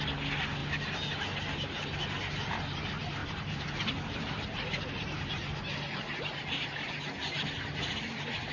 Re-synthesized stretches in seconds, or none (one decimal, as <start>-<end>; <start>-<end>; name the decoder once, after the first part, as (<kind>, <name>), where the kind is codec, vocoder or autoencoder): 3.2-5.4 (vocoder, BigVGAN v2)